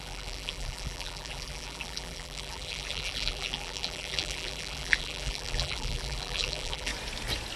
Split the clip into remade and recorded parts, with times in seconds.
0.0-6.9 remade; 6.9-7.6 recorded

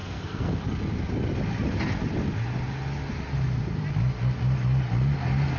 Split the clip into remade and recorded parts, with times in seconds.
0.0-0.6 remade; 0.6-5.6 recorded

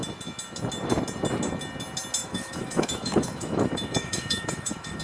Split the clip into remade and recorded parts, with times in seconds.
0.0-2.2 recorded; 2.2-5.0 remade

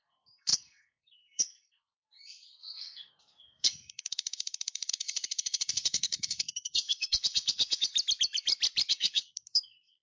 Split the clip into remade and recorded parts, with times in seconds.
0.0-7.9 remade; 7.9-8.9 recorded; 8.9-10.0 remade

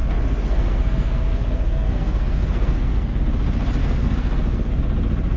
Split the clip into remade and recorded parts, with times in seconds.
0.0-3.2 remade; 3.2-3.8 recorded; 3.8-4.8 remade; 4.8-5.4 recorded

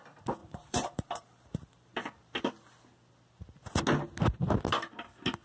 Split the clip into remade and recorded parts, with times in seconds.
0.0-0.4 recorded; 0.4-2.4 remade; 2.4-5.4 recorded

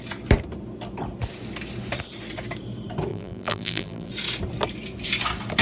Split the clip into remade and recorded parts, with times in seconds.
0.0-3.1 recorded; 3.1-4.1 remade; 4.1-5.6 recorded